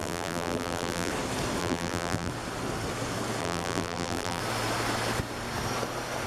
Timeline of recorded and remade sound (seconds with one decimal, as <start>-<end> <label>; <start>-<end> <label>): 0.0-1.1 remade; 1.1-1.6 recorded; 1.6-2.3 remade; 2.3-3.4 recorded; 3.4-4.4 remade; 4.4-6.3 recorded